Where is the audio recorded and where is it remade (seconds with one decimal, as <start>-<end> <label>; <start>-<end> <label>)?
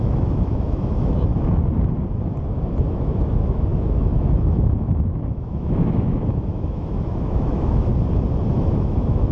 0.0-1.3 remade; 1.3-2.9 recorded; 2.9-7.9 remade; 7.9-8.5 recorded; 8.5-9.3 remade